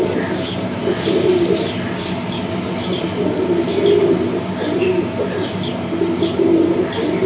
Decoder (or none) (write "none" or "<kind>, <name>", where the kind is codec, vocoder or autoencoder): none